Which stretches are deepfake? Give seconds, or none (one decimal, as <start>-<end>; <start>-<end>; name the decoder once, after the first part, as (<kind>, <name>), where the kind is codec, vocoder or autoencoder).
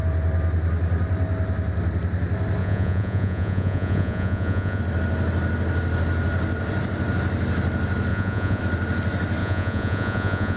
2.6-4.8 (vocoder, Vocos); 8.1-8.6; 9.4-10.6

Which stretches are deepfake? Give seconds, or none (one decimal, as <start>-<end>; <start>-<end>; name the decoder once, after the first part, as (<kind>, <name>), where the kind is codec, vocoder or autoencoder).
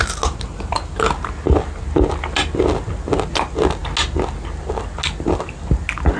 none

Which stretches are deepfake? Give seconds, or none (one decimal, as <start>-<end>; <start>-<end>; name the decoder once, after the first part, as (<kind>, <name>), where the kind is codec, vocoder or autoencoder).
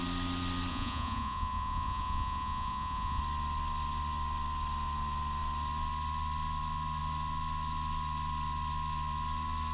0.7-3.2 (vocoder, Vocos)